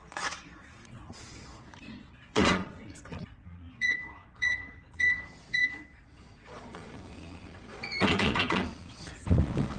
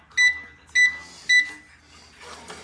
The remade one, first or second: first